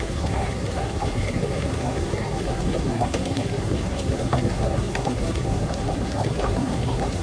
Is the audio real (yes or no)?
no